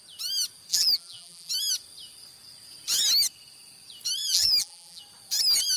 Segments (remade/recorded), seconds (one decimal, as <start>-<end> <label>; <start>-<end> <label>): 0.0-0.7 recorded; 0.7-1.5 remade; 1.5-4.2 recorded; 4.2-5.0 remade; 5.0-5.8 recorded